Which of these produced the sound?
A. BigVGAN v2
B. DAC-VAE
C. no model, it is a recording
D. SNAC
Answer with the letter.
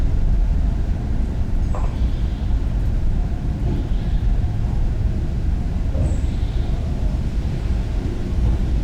A